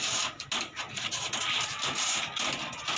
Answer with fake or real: real